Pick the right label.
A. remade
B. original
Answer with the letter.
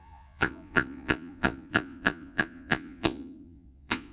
A